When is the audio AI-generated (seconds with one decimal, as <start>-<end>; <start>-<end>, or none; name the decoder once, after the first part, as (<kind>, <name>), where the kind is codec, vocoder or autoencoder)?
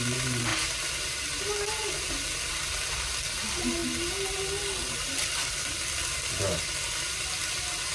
none